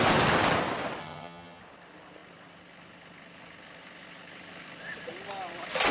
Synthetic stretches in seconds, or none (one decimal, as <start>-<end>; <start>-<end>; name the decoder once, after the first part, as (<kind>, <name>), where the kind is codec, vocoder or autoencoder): 1.0-1.6 (vocoder, HiFi-GAN)